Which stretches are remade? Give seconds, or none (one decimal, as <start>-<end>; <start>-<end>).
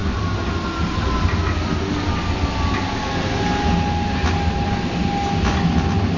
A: none